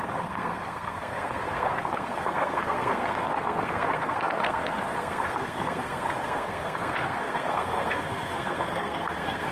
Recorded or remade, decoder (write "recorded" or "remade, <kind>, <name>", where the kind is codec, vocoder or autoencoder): remade, codec, SNAC